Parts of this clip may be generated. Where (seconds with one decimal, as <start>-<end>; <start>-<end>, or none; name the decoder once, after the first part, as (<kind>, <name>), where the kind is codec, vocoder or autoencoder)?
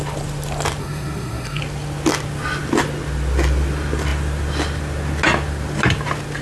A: 0.8-1.6 (codec, SNAC)